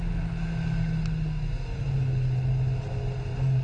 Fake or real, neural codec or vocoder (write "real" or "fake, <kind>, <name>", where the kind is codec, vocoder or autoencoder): real